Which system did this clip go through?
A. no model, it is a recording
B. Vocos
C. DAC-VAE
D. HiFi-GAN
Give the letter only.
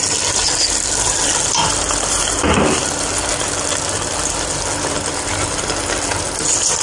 A